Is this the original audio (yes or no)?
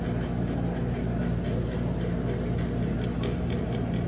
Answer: yes